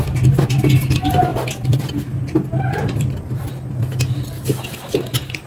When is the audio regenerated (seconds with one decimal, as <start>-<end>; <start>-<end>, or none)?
1.3-3.5